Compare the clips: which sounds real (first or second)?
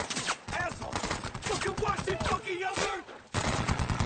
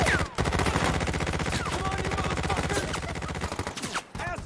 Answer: second